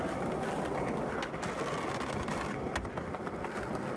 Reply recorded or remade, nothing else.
recorded